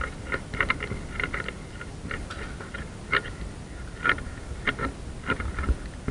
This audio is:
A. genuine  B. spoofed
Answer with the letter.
A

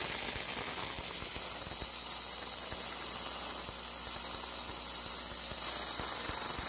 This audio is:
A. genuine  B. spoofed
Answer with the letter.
A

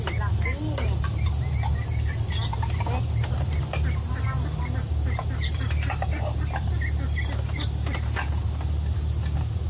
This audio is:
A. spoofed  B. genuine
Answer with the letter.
B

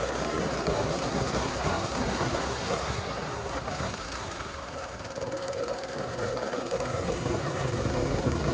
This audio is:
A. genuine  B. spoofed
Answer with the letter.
B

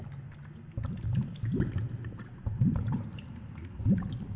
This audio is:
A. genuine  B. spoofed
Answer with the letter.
A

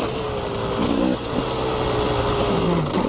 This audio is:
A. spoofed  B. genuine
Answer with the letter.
B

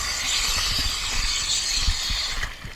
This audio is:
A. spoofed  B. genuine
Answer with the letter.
B